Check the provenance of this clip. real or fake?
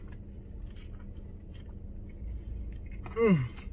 real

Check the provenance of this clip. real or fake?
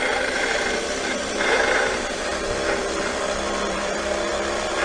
fake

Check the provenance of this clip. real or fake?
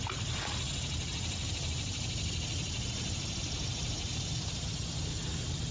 real